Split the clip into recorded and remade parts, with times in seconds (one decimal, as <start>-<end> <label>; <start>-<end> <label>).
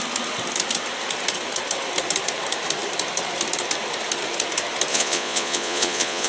0.0-4.9 recorded; 4.9-6.3 remade